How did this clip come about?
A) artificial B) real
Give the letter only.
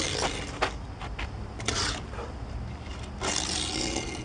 B